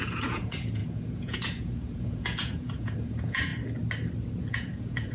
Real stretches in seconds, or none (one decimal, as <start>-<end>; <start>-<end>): 3.5-4.5